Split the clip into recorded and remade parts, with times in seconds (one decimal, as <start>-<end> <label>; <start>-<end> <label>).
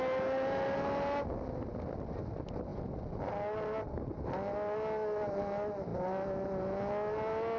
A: 0.0-7.6 recorded